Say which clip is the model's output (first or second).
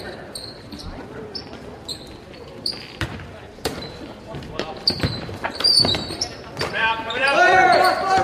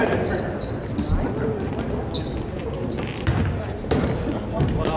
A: first